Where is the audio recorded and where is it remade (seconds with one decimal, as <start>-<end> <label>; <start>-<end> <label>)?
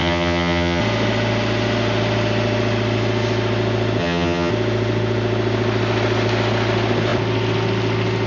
0.0-0.8 remade; 0.8-4.0 recorded; 4.0-4.5 remade; 4.5-8.3 recorded